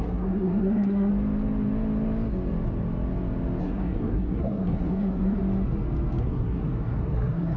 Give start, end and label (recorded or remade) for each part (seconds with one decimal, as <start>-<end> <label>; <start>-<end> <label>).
0.0-1.1 remade; 1.1-3.6 recorded; 3.6-5.4 remade; 5.4-6.2 recorded; 6.2-7.6 remade